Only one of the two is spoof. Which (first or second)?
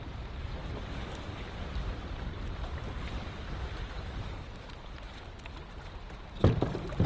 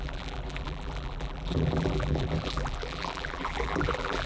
second